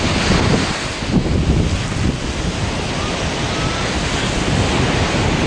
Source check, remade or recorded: recorded